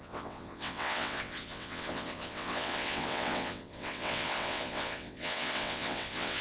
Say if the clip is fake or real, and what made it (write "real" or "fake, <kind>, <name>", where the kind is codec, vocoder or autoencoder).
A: fake, vocoder, WaveNeXt